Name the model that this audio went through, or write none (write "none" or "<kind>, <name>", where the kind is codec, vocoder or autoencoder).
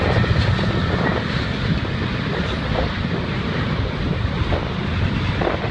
none